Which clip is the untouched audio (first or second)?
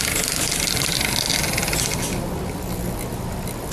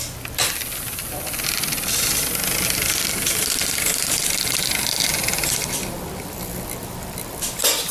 first